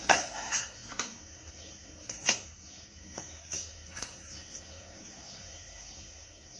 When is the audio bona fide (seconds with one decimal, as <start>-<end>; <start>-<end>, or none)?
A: none

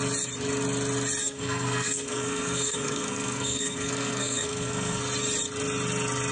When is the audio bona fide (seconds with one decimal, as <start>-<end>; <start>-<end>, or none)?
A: 0.0-1.2; 5.0-6.3

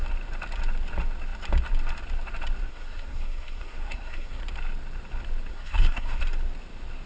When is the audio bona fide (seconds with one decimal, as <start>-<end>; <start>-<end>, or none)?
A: 0.0-2.7; 4.4-5.5; 6.2-7.1

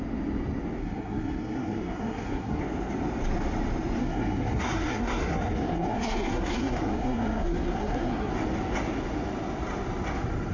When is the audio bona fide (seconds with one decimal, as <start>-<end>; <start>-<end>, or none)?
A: 0.0-0.8; 2.6-4.0; 8.3-10.5